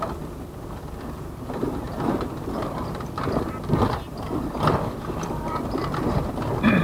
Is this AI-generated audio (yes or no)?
yes